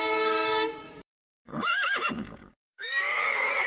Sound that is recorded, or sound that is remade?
remade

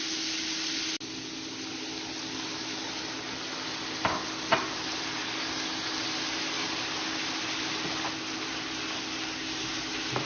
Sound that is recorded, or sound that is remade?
recorded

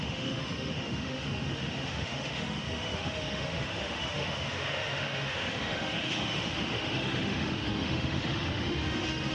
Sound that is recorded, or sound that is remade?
remade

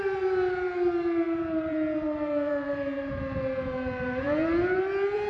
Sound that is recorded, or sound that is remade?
remade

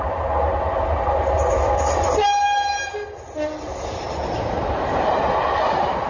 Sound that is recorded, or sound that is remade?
recorded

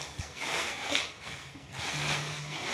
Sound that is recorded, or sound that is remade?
remade